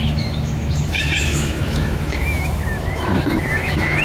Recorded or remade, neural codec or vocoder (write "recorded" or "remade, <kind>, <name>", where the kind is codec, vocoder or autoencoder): remade, autoencoder, DAC-VAE